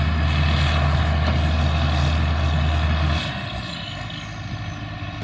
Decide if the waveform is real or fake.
real